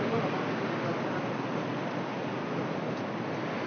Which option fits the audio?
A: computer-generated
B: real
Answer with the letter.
B